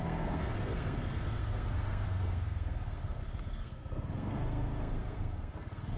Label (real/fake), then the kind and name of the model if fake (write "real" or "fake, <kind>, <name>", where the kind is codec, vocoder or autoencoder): fake, codec, SNAC